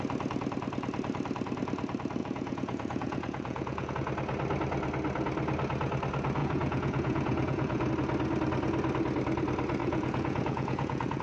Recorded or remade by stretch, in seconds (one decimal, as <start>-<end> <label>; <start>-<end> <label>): 0.0-2.2 recorded; 2.2-3.9 remade; 3.9-6.4 recorded; 6.4-7.9 remade; 7.9-9.8 recorded; 9.8-11.2 remade

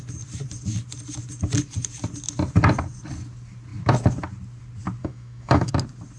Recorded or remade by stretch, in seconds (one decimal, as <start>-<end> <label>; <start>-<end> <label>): 0.0-5.0 recorded; 5.0-5.7 remade; 5.7-6.2 recorded

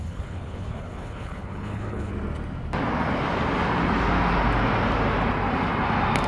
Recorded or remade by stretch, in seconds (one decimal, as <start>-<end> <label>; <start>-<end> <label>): 0.0-2.1 remade; 2.1-6.3 recorded